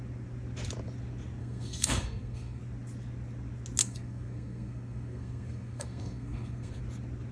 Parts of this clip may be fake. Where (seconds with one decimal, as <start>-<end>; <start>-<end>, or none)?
1.4-2.6; 3.8-6.8